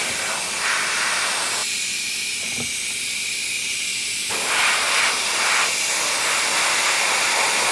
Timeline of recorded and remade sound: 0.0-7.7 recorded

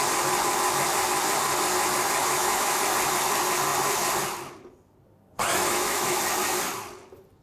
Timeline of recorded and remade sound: 0.0-2.2 recorded; 2.2-2.8 remade; 2.8-5.5 recorded; 5.5-6.2 remade; 6.2-7.4 recorded

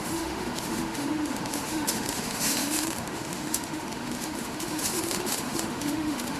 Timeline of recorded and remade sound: 0.0-6.4 remade

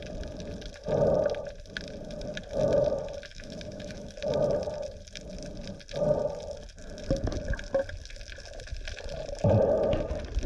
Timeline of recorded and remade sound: 0.0-3.3 recorded; 3.3-4.2 remade; 4.2-10.5 recorded

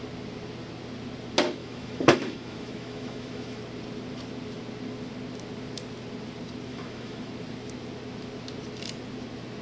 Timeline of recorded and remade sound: 0.0-1.6 recorded; 1.6-3.6 remade; 3.6-6.7 recorded; 6.7-7.3 remade; 7.3-9.6 recorded

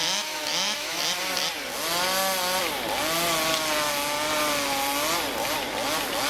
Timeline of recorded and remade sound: 0.0-1.0 remade; 1.0-6.3 recorded